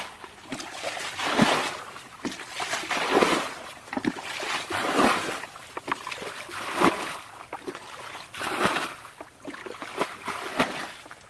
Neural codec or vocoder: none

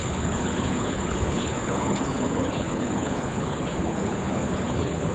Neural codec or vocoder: codec, HILCodec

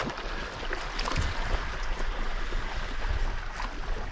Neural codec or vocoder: none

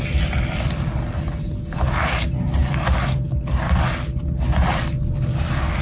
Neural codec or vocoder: none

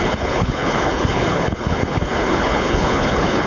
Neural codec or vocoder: codec, HILCodec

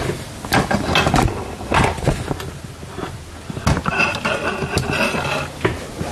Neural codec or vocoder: none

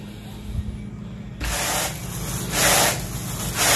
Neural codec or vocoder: none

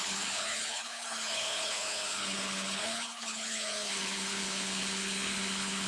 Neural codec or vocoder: codec, HILCodec